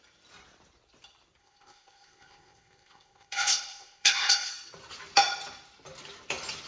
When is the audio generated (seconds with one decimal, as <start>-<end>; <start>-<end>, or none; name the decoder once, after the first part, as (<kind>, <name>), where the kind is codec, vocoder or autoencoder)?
1.4-4.5 (codec, ZipCodec)